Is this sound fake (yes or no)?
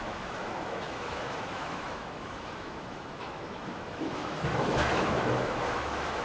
yes